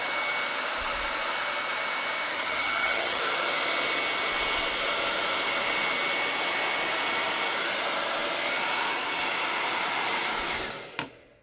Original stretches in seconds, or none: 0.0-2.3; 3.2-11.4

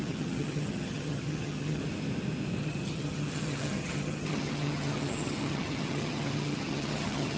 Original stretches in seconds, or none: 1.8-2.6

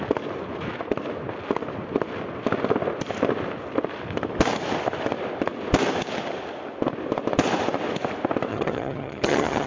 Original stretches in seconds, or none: 0.0-8.5

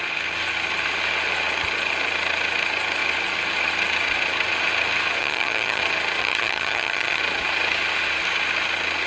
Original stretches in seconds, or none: 0.0-5.2; 5.8-6.2; 7.2-9.1

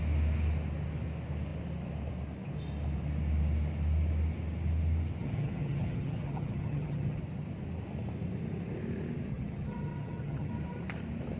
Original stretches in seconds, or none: 0.0-5.2; 7.2-9.3; 10.5-11.4

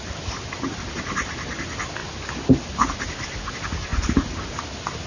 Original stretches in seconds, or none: 0.0-5.1

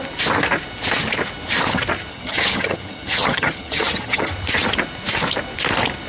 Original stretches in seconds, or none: 0.0-2.1; 4.3-6.1